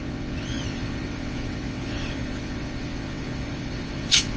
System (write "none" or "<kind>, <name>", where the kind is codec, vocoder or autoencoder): vocoder, WaveNeXt